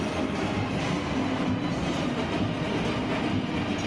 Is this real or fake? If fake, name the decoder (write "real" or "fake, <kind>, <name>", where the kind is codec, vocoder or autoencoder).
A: real